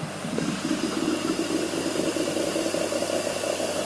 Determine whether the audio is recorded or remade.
remade